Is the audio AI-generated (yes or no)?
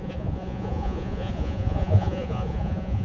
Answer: yes